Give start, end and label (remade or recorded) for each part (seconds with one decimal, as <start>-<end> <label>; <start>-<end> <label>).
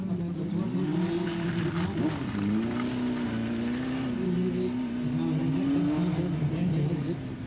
0.0-7.5 recorded